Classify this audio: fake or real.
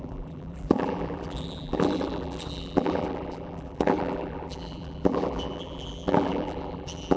fake